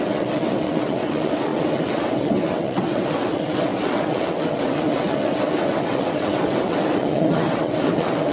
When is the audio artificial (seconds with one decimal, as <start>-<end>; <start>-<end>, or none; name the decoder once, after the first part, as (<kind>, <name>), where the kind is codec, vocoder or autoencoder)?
0.0-8.3 (vocoder, WaveNeXt)